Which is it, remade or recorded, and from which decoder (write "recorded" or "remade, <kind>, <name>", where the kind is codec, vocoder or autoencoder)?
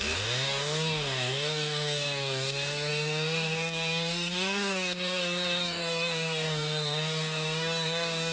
remade, codec, DAC